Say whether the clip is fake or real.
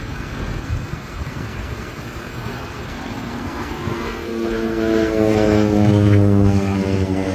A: fake